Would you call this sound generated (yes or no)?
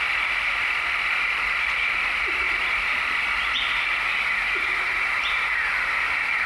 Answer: no